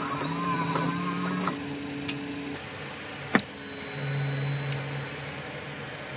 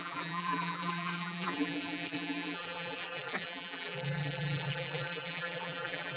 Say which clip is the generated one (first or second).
second